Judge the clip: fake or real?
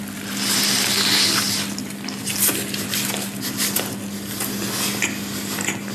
real